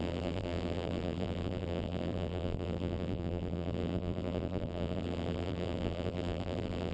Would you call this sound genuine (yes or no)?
no